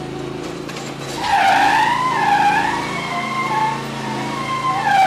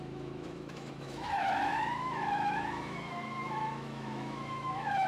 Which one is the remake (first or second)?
second